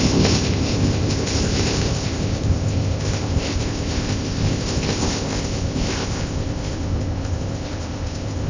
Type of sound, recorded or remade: remade